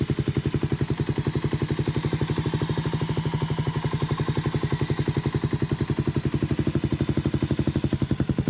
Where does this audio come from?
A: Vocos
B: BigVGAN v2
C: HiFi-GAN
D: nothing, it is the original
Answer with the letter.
D